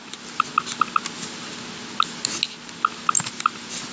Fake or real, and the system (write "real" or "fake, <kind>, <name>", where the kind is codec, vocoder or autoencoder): real